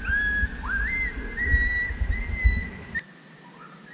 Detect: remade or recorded recorded